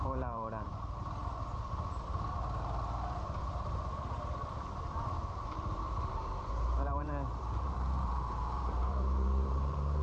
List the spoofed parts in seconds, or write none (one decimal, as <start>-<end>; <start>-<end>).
0.0-0.7; 4.3-10.0